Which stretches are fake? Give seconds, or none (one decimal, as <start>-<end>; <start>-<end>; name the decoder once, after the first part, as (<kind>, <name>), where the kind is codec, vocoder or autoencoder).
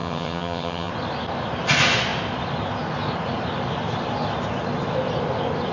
0.0-0.9 (vocoder, HiFi-GAN)